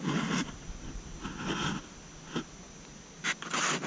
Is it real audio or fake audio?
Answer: real